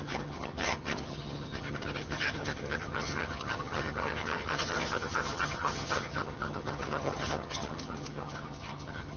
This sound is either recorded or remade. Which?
remade